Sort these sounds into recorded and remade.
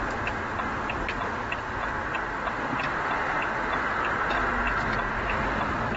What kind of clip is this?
recorded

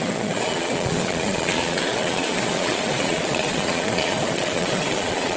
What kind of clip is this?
remade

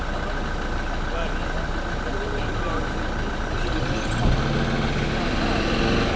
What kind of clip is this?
recorded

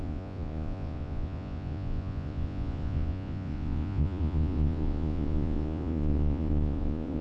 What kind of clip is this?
remade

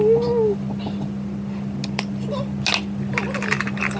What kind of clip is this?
recorded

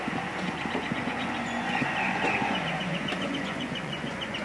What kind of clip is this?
remade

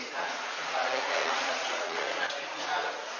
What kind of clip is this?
remade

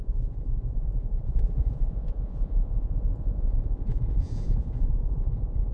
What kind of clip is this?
remade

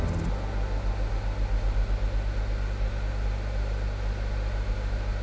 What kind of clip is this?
recorded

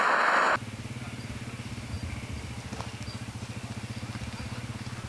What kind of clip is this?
recorded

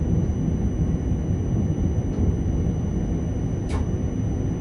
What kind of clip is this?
recorded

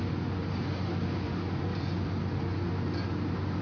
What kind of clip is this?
recorded